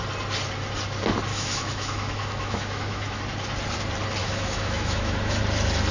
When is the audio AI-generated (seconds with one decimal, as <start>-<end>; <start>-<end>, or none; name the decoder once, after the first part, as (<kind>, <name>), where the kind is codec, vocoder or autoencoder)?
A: 1.3-3.2 (autoencoder, DAC-VAE); 4.2-5.4